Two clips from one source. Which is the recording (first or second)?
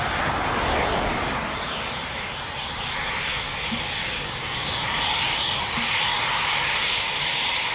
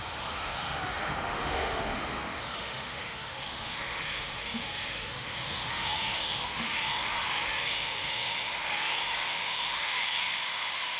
first